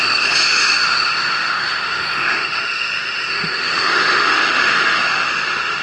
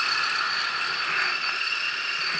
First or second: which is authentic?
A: second